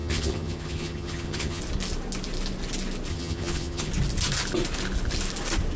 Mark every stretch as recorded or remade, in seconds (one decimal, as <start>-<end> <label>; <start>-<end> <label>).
0.0-1.6 remade; 1.6-3.1 recorded; 3.1-3.9 remade; 3.9-5.8 recorded

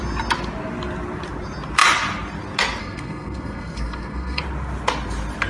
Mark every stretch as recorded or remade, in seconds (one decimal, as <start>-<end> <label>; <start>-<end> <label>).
0.0-2.8 recorded; 2.8-4.4 remade; 4.4-5.5 recorded

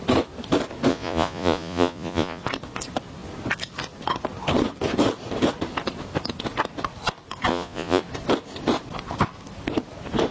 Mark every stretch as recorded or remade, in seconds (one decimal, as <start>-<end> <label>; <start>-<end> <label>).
0.0-0.9 recorded; 0.9-2.4 remade; 2.4-7.5 recorded; 7.5-8.0 remade; 8.0-10.3 recorded

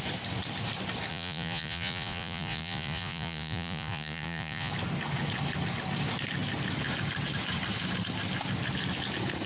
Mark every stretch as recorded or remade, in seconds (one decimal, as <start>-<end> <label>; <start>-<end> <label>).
0.0-1.1 recorded; 1.1-4.7 remade; 4.7-9.5 recorded

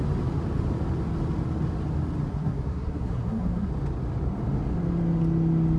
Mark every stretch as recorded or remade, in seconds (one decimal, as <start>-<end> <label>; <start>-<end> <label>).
0.0-2.3 recorded; 2.3-3.7 remade; 3.7-5.8 recorded

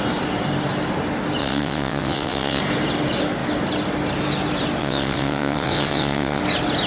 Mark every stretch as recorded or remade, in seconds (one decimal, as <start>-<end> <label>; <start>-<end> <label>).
0.0-1.4 recorded; 1.4-2.6 remade; 2.6-4.8 recorded; 4.8-6.4 remade; 6.4-6.9 recorded

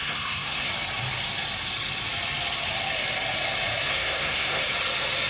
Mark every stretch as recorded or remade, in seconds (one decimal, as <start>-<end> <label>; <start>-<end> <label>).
0.0-0.7 remade; 0.7-3.9 recorded; 3.9-4.6 remade; 4.6-5.3 recorded

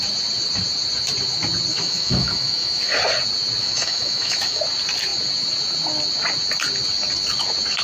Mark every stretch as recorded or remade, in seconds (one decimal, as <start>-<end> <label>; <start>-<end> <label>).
0.0-1.7 recorded; 1.7-3.0 remade; 3.0-3.6 recorded; 3.6-4.6 remade; 4.6-7.8 recorded